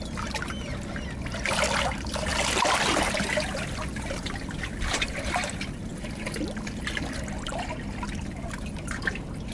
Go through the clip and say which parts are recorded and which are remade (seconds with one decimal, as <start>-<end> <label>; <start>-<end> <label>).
0.0-9.5 recorded